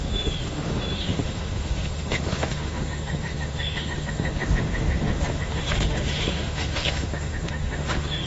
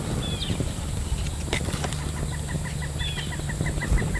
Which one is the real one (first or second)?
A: second